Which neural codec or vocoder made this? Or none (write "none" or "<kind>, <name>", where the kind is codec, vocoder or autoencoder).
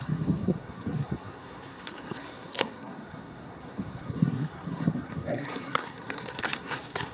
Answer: codec, SNAC